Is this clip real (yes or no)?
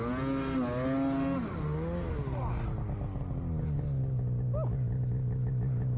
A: yes